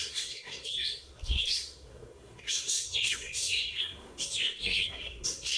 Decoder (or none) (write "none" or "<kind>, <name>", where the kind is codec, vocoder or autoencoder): codec, SNAC